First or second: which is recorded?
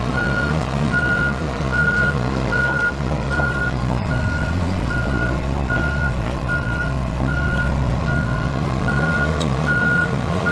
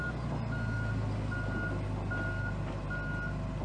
second